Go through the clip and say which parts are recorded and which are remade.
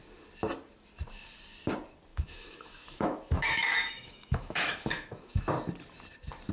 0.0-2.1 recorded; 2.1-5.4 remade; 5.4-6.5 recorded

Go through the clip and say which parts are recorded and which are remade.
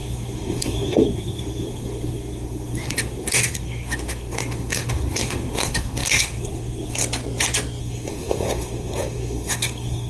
0.0-7.0 remade; 7.0-7.8 recorded; 7.8-10.1 remade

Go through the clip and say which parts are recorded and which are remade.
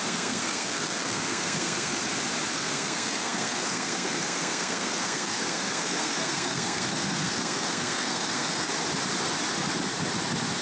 0.0-2.0 remade; 2.0-2.5 recorded; 2.5-8.7 remade; 8.7-10.6 recorded